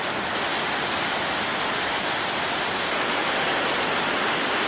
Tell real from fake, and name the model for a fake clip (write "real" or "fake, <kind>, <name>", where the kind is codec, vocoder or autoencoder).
real